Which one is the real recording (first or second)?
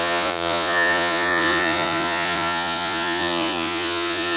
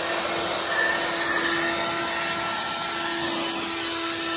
second